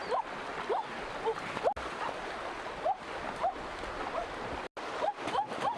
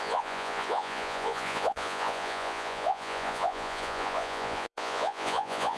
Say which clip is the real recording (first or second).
first